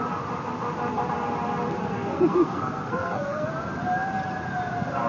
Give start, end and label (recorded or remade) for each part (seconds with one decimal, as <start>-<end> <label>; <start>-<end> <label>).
0.0-1.8 recorded; 1.8-3.5 remade; 3.5-5.1 recorded